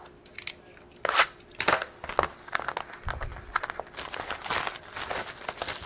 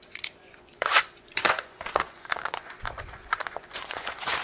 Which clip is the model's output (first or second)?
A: second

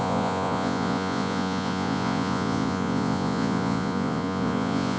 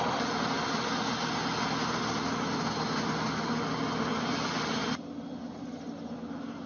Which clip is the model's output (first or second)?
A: first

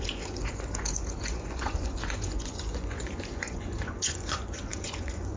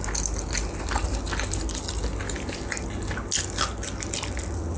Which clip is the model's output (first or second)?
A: first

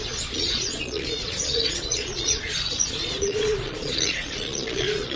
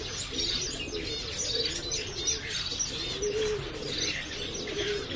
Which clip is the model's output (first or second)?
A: first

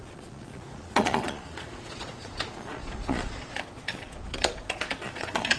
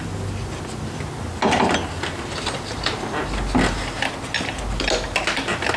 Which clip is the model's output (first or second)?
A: first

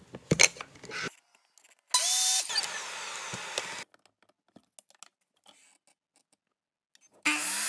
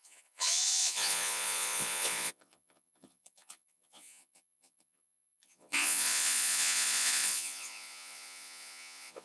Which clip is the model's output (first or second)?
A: second